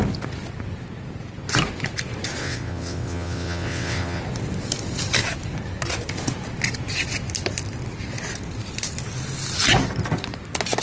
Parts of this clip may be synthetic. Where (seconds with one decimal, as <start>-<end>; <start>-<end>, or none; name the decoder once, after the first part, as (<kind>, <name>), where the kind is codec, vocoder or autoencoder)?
2.4-4.2 (vocoder, WaveNeXt)